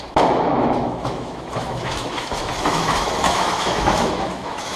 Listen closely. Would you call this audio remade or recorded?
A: remade